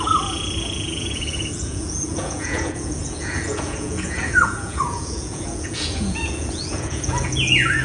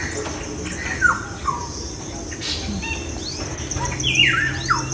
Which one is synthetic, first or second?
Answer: first